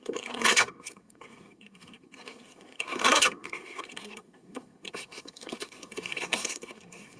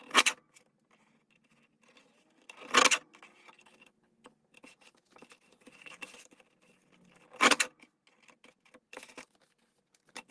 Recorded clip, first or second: second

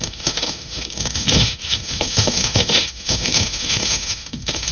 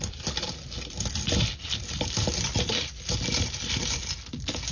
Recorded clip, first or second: second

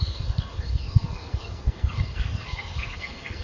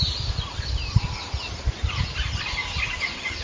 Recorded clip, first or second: second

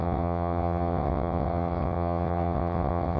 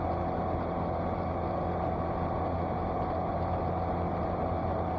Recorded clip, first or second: second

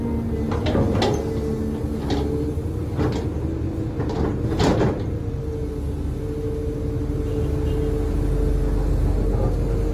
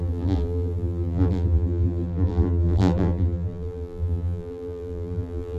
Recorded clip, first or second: first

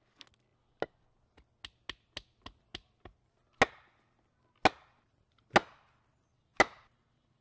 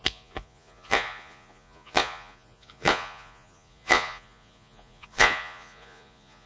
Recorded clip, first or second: first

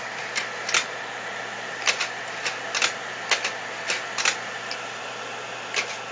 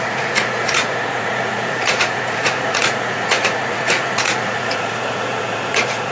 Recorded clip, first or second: first